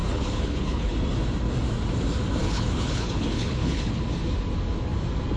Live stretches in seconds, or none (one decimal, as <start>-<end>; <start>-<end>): 0.9-2.4; 4.0-5.4